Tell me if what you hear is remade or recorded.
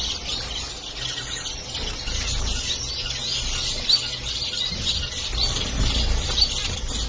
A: recorded